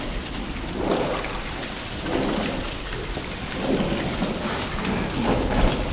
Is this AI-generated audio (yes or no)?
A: no